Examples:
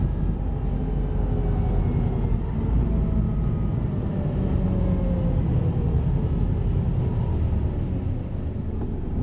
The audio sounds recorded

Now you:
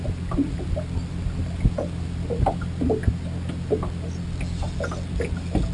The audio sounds recorded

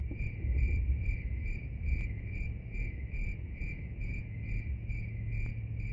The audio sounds remade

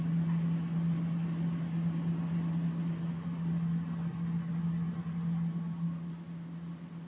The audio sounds recorded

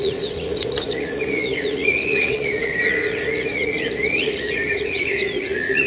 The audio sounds remade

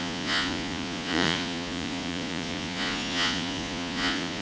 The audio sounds remade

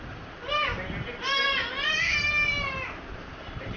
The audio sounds recorded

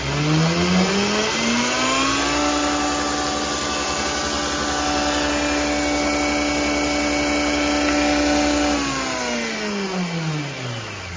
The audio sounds recorded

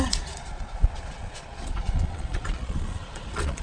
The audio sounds remade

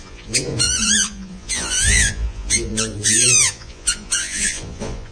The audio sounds remade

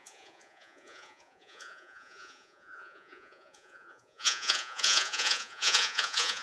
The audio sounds remade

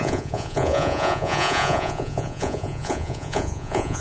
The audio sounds remade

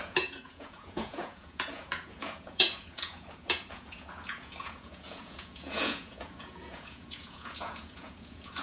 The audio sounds remade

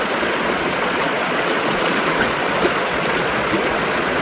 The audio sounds remade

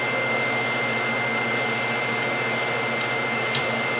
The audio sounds recorded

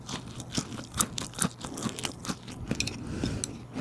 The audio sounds recorded